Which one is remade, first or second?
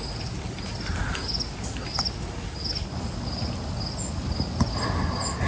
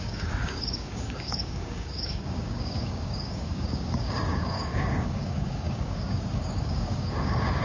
second